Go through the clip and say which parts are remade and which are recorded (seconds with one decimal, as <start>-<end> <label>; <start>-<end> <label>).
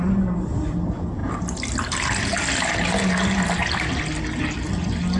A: 0.0-5.2 recorded